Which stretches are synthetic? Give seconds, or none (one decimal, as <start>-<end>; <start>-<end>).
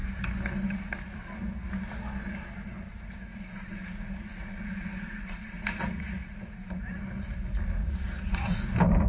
2.9-7.0; 7.8-8.6